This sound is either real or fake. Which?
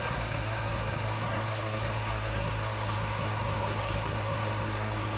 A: fake